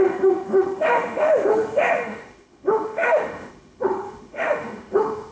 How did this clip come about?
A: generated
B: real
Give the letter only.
A